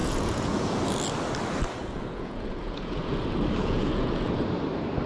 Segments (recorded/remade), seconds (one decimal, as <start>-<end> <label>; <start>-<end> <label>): 0.0-0.8 remade; 0.8-1.8 recorded; 1.8-3.2 remade; 3.2-3.6 recorded; 3.6-4.3 remade; 4.3-5.1 recorded